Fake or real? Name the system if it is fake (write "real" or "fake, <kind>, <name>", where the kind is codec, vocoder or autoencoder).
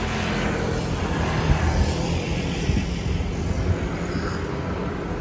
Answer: real